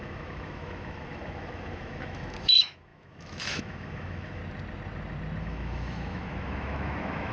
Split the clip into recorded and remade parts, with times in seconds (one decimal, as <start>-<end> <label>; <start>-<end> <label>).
0.0-4.4 remade; 4.4-5.4 recorded; 5.4-7.3 remade